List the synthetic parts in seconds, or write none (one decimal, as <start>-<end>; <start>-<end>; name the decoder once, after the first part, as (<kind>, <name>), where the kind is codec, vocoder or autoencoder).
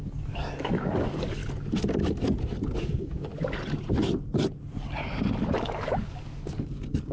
0.0-1.4 (codec, DAC); 2.8-3.3; 5.5-7.1